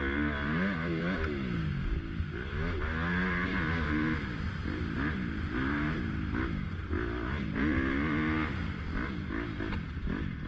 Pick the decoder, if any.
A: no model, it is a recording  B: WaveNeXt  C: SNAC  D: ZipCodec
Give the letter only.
A